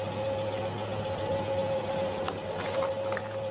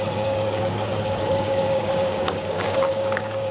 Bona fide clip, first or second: first